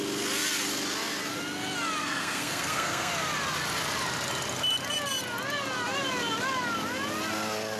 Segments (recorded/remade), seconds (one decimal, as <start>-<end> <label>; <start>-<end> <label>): 0.0-2.0 recorded; 2.0-3.1 remade; 3.1-7.8 recorded